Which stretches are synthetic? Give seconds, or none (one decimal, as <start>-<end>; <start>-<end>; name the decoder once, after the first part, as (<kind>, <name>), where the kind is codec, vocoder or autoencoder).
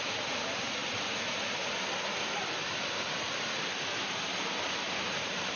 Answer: none